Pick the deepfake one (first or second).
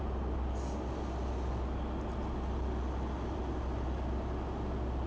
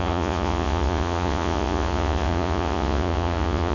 second